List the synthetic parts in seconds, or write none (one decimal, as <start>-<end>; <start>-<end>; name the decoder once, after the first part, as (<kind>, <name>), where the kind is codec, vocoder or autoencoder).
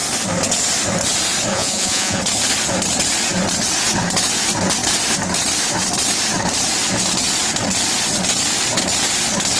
1.5-2.2 (vocoder, Vocos)